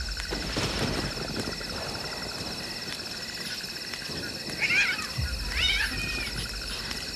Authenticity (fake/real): real